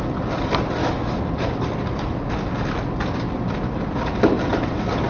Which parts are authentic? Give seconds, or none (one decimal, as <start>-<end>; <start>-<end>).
0.0-0.8; 1.3-5.1